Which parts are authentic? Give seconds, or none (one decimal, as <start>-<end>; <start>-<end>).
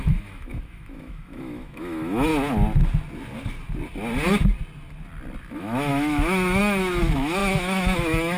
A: 2.3-5.4